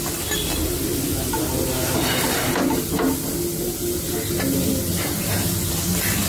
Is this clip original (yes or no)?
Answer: yes